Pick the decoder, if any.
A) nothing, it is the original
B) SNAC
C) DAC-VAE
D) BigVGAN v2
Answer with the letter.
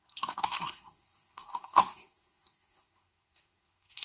B